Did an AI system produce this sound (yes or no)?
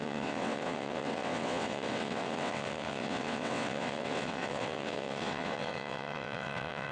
yes